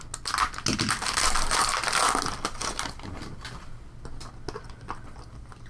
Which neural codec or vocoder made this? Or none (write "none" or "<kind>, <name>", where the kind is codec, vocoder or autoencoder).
none